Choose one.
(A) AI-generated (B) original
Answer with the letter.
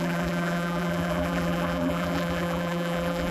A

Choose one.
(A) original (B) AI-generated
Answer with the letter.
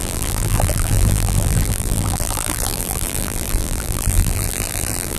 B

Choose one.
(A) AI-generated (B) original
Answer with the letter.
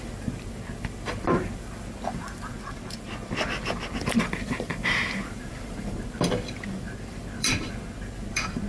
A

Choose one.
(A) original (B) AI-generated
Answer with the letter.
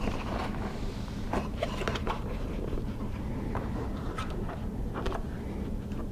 B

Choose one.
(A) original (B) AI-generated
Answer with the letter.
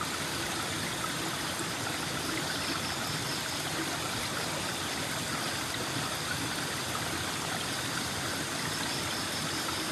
A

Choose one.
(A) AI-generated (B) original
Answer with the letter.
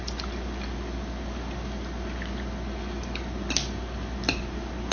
B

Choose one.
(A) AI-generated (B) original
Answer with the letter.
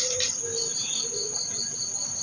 A